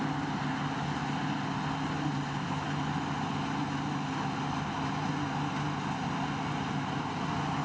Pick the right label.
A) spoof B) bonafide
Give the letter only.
B